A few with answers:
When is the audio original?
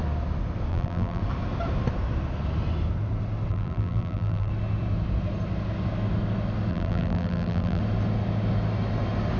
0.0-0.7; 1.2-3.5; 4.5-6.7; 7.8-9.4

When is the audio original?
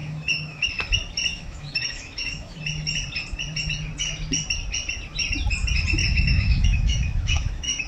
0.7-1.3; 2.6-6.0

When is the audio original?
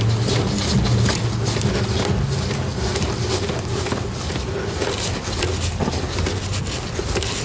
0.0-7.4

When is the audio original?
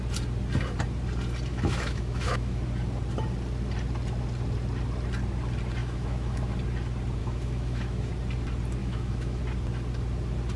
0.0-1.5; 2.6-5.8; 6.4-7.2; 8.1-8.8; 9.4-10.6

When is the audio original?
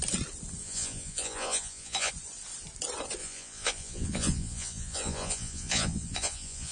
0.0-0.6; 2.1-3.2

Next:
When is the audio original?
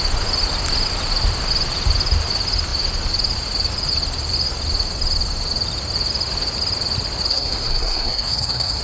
0.0-7.3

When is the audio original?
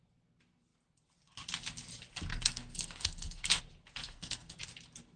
0.0-2.3; 3.6-4.0; 4.6-5.2